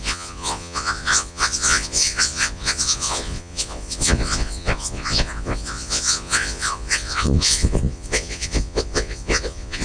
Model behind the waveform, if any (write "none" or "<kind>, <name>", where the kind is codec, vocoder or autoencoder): vocoder, Vocos